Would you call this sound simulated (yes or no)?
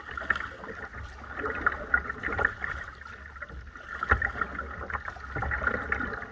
no